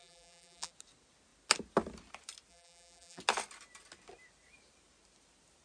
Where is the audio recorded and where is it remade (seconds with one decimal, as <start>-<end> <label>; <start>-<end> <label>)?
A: 0.0-0.7 remade; 0.7-2.5 recorded; 2.5-3.2 remade; 3.2-5.6 recorded